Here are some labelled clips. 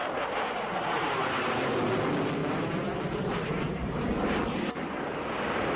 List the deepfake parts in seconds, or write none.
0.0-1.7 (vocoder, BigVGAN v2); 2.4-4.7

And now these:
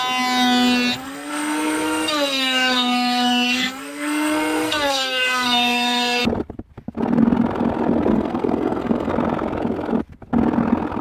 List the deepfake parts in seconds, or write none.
1.0-6.2 (codec, SNAC); 8.1-9.1

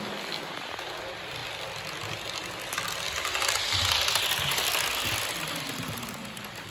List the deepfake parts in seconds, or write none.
none

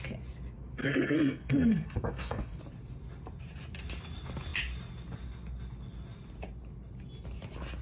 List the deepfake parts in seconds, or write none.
0.8-2.6 (codec, SNAC)

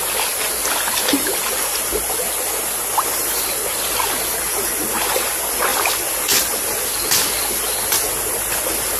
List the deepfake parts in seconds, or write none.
5.7-6.4 (vocoder, BigVGAN v2)

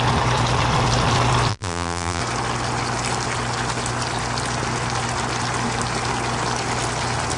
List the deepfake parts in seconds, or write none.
1.5-2.2 (vocoder, BigVGAN v2)